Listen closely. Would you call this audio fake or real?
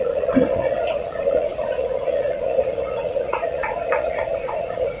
fake